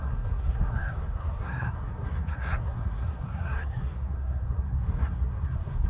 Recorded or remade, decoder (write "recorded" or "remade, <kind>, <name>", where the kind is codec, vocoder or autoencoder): remade, codec, SNAC